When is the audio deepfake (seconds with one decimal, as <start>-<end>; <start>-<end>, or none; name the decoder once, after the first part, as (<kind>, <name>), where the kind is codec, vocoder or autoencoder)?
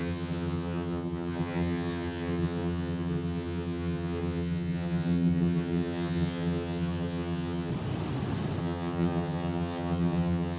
0.0-7.7 (vocoder, HiFi-GAN); 8.6-10.6